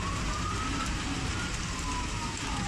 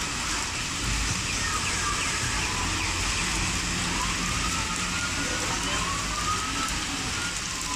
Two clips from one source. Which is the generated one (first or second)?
first